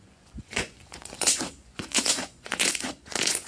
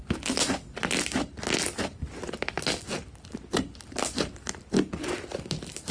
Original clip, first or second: second